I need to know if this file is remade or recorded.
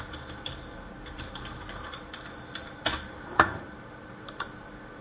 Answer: remade